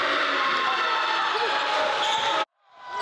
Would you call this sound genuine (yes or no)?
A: yes